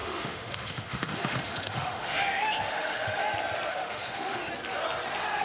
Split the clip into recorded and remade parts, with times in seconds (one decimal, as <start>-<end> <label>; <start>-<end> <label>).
0.0-3.2 remade; 3.2-3.7 recorded; 3.7-4.5 remade; 4.5-5.4 recorded

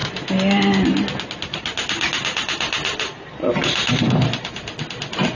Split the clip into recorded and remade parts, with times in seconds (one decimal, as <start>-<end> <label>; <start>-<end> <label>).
0.0-5.3 recorded

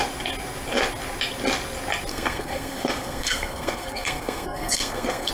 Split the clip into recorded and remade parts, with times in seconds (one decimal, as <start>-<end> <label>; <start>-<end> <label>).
0.0-2.1 recorded; 2.1-5.3 remade

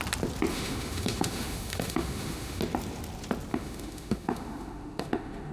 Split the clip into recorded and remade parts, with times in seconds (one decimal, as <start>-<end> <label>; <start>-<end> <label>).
0.0-0.5 recorded; 0.5-2.6 remade; 2.6-3.5 recorded; 3.5-5.5 remade